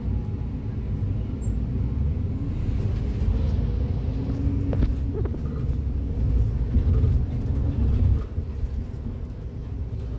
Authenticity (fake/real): real